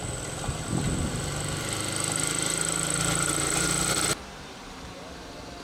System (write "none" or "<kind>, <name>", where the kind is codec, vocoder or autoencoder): none